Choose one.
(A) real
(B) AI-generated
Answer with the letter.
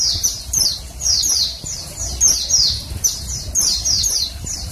B